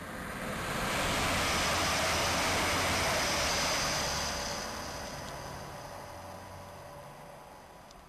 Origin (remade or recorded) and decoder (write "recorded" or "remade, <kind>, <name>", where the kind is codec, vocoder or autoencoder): recorded